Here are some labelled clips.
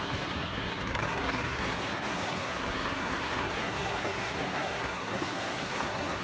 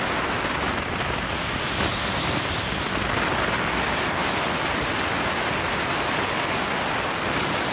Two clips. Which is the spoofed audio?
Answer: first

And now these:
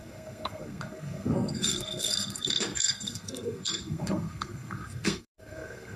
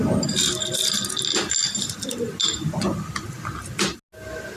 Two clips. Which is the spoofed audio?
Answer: first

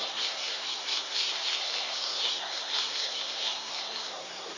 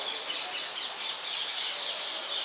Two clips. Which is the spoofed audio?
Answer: first